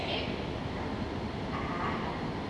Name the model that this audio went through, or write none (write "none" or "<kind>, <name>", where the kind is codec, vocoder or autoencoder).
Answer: none